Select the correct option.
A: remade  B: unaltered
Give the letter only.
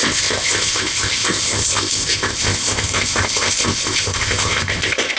A